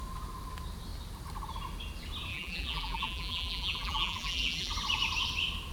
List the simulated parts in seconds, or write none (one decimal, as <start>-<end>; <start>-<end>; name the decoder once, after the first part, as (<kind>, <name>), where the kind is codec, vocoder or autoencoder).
2.3-4.7 (vocoder, BigVGAN v2)